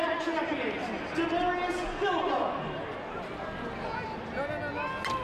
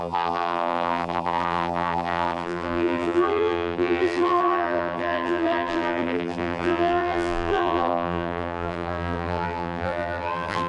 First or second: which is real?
first